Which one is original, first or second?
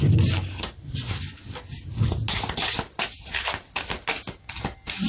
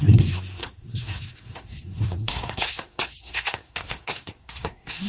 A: first